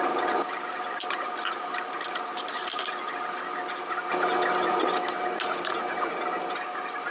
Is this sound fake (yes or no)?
no